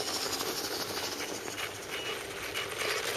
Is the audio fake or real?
real